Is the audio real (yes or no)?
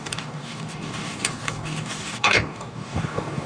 no